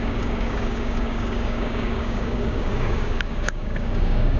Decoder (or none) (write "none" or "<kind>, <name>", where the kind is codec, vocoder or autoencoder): codec, DAC